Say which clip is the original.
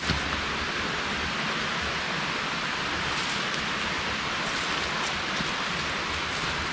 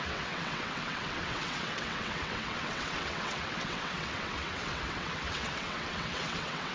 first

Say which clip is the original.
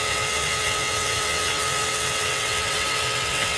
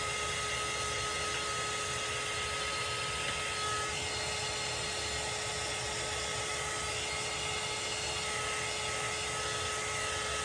second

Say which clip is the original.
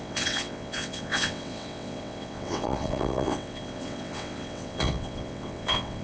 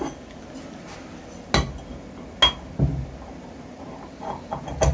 second